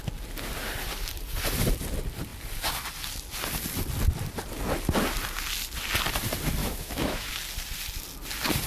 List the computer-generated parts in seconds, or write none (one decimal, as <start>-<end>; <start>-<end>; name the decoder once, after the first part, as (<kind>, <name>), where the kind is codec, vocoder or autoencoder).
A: 6.6-7.3 (autoencoder, DAC-VAE)